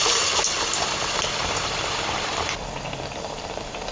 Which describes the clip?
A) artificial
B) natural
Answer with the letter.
A